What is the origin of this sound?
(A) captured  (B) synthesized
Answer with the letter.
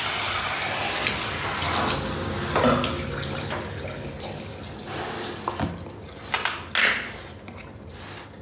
A